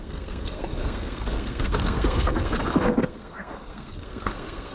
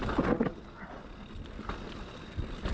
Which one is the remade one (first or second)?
first